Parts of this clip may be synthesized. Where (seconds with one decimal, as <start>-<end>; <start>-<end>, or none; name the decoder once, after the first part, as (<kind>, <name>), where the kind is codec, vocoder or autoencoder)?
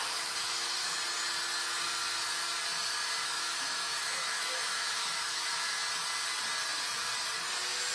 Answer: 0.0-1.0 (autoencoder, DAC-VAE); 3.2-5.8